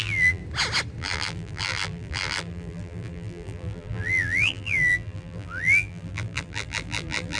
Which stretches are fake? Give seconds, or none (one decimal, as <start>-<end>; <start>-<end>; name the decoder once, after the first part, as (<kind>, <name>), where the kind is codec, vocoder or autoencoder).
0.0-0.4 (vocoder, BigVGAN v2); 1.0-7.4